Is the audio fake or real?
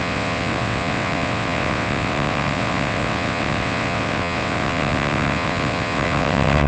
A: fake